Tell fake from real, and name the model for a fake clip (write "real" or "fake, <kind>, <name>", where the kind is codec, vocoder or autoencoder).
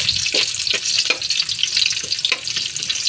real